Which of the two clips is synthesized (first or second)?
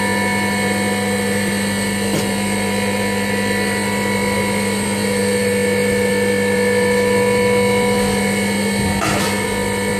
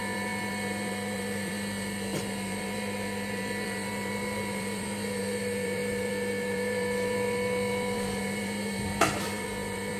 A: second